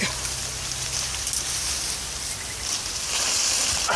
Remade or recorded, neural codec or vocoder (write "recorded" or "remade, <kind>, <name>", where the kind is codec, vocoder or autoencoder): recorded